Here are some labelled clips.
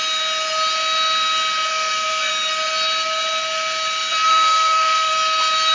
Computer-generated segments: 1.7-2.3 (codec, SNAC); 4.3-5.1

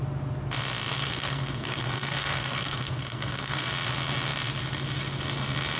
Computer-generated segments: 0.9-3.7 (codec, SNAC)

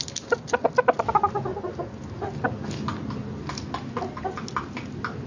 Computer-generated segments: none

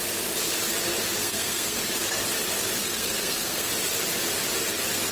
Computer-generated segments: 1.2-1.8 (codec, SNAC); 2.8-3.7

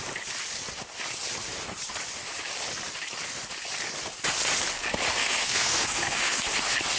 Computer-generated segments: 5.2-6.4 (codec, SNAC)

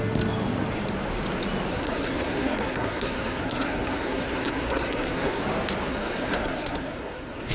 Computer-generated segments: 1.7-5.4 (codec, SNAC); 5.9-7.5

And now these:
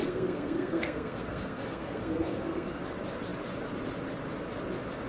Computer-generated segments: 0.0-2.8 (codec, SNAC)